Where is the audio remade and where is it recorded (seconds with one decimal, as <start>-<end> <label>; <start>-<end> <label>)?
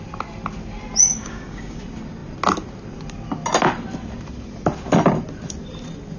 0.0-1.1 recorded; 1.1-1.8 remade; 1.8-6.2 recorded